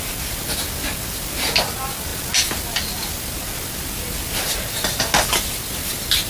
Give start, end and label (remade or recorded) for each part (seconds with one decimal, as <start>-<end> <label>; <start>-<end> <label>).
0.0-6.3 recorded